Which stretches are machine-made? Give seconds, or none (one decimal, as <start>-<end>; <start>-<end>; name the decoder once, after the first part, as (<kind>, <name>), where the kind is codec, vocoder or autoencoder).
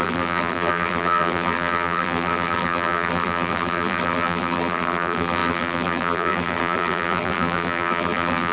0.0-8.5 (vocoder, BigVGAN v2)